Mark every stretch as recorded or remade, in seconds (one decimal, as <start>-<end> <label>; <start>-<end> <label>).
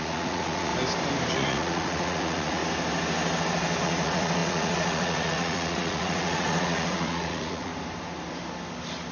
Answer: 0.0-0.7 remade; 0.7-1.3 recorded; 1.3-2.6 remade; 2.6-3.8 recorded; 3.8-7.7 remade; 7.7-9.1 recorded